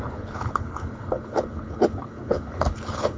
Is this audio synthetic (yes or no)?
yes